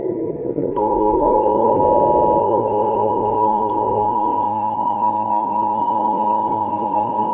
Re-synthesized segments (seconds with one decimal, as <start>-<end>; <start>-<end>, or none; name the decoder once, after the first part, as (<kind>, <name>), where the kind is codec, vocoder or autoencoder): 0.0-1.8 (codec, SNAC); 2.4-7.3